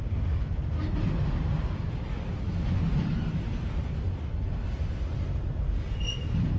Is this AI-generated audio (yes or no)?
no